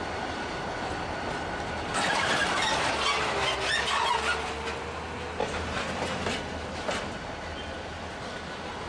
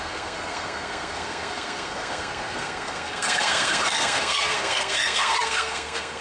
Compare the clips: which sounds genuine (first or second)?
first